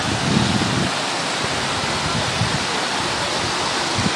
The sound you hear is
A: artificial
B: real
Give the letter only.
B